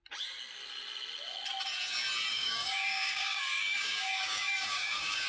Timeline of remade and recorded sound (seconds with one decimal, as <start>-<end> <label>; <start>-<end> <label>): 0.0-2.3 recorded; 2.3-5.3 remade